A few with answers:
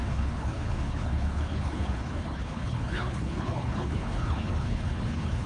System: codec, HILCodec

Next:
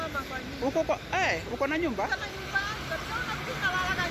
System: none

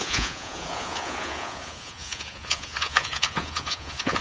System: vocoder, Vocos